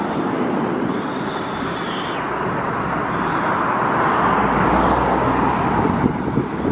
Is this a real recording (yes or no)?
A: yes